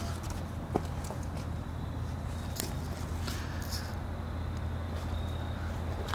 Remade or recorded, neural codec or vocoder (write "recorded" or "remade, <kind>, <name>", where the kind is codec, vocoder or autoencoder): recorded